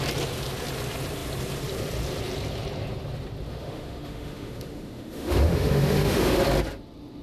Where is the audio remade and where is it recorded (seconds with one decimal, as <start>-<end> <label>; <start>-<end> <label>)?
0.0-3.5 recorded; 3.5-6.4 remade; 6.4-7.2 recorded